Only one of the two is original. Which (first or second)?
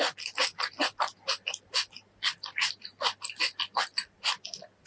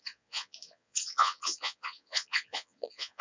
first